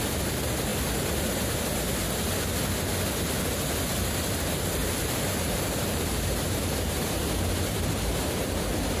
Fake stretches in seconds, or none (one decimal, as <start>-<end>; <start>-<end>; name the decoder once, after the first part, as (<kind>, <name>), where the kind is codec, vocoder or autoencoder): 4.8-9.0 (vocoder, BigVGAN v2)

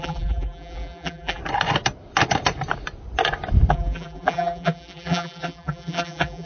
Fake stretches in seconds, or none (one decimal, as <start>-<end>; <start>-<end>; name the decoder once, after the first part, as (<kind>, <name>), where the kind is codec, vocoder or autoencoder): 0.0-1.4 (vocoder, BigVGAN v2); 3.7-6.5

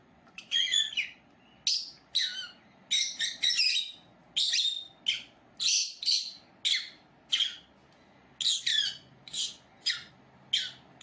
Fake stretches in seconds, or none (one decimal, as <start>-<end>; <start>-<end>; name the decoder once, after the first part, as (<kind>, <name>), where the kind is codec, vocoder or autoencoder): 0.0-0.9 (vocoder, Vocos); 8.7-10.1

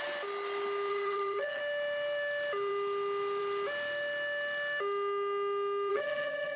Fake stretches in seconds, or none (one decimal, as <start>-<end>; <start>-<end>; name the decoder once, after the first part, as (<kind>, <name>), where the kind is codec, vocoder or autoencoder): 0.9-1.6 (vocoder, HiFi-GAN); 5.9-6.6